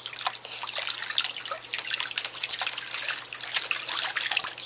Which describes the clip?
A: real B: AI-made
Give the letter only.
A